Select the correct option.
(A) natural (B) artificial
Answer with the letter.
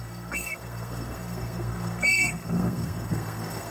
B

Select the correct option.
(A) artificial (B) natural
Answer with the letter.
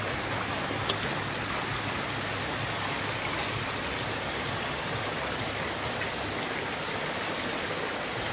B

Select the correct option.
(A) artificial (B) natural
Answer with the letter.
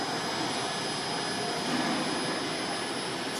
B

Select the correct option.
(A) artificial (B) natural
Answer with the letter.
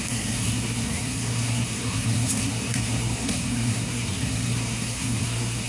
A